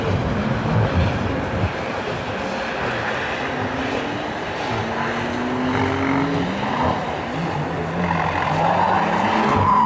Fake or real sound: real